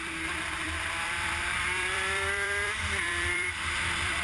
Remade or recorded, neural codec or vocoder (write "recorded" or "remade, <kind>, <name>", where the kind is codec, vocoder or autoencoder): remade, vocoder, BigVGAN v2